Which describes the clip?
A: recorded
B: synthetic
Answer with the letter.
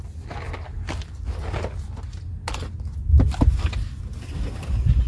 A